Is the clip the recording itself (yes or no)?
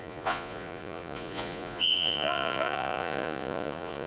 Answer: no